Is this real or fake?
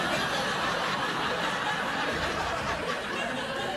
real